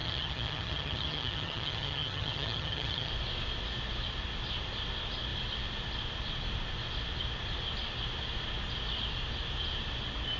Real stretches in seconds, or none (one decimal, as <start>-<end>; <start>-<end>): 3.1-10.4